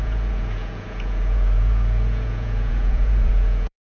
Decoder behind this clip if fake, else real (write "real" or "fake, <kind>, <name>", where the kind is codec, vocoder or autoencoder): fake, vocoder, Vocos